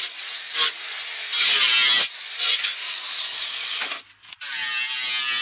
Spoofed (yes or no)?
no